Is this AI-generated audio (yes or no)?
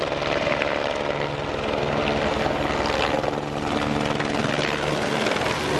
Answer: no